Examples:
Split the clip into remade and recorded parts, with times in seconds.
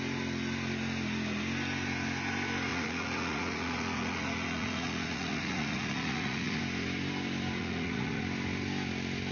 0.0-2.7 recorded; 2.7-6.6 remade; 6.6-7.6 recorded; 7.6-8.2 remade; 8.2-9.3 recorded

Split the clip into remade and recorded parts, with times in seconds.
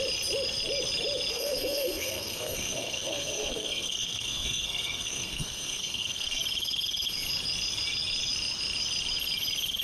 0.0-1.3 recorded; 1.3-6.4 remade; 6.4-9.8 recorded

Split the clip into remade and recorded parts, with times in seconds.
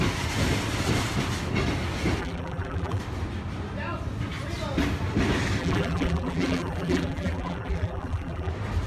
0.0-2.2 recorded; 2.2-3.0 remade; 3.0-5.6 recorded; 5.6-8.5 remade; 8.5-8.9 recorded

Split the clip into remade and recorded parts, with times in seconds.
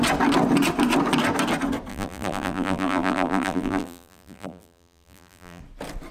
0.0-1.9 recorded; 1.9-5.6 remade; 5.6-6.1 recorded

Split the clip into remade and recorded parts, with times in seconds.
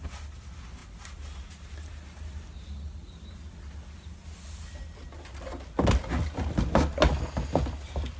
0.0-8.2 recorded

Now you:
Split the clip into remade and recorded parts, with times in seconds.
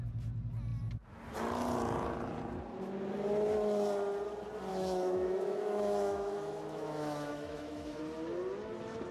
0.0-4.7 recorded; 4.7-8.0 remade; 8.0-9.1 recorded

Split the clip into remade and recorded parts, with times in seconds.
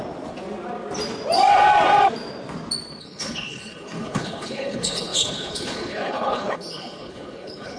0.0-3.0 recorded; 3.0-7.8 remade